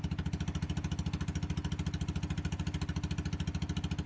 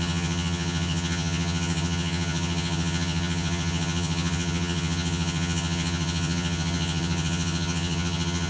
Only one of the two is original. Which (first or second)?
first